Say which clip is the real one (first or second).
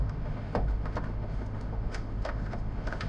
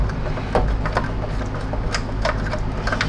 second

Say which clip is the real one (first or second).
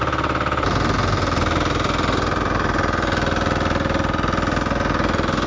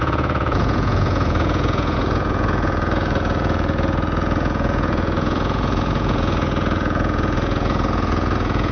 first